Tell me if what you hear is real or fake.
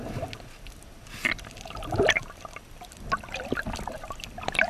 real